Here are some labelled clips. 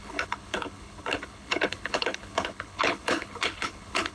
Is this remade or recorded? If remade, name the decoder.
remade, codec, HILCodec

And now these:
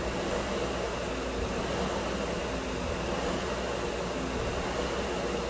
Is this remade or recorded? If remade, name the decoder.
recorded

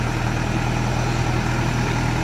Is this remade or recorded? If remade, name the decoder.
recorded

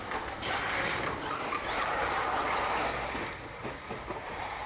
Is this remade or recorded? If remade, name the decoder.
recorded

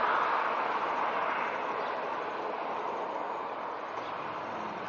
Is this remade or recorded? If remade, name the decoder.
recorded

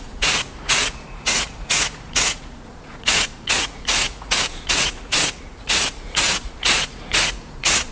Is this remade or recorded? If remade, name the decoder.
remade, vocoder, Vocos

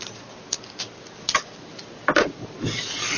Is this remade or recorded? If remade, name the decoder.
recorded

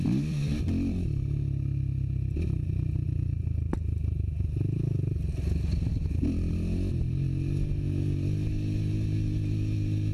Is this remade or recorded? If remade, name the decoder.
recorded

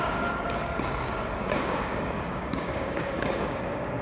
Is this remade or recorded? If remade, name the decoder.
remade, codec, DAC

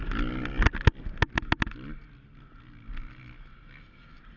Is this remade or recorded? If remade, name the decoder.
recorded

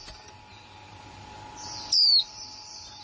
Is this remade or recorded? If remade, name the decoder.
recorded